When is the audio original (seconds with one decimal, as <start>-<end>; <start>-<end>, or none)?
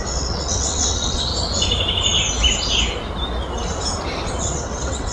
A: 1.3-4.4